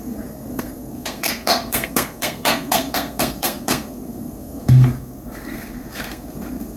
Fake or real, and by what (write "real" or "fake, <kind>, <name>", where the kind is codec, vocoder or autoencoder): fake, codec, SNAC